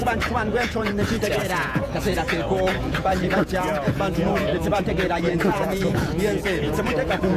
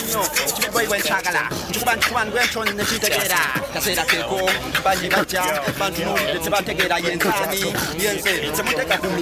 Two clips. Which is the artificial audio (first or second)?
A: first